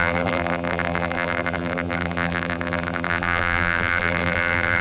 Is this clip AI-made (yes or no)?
yes